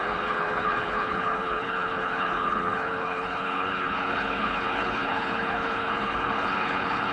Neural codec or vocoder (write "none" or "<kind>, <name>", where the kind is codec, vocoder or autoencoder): codec, HILCodec